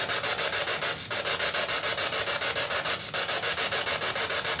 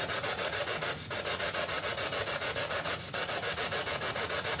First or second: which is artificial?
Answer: second